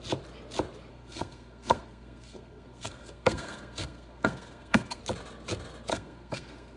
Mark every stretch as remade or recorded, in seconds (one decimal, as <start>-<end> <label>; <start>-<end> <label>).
0.0-0.9 recorded; 0.9-5.0 remade; 5.0-5.9 recorded; 5.9-6.8 remade